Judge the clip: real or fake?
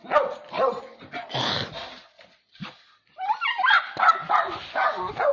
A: real